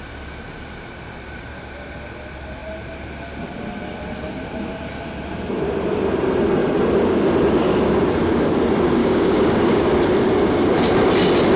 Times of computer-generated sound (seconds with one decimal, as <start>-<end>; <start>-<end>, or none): 9.0-9.9